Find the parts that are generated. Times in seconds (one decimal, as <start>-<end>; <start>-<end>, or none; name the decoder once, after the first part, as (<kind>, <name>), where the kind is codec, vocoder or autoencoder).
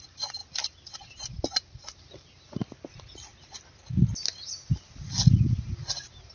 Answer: none